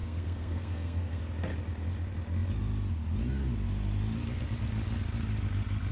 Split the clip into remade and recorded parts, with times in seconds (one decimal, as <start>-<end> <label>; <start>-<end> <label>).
0.0-1.2 remade; 1.2-5.9 recorded